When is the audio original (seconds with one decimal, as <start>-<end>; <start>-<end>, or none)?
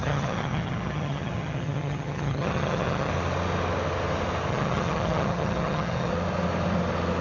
3.1-4.5; 6.1-7.2